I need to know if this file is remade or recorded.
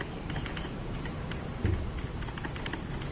remade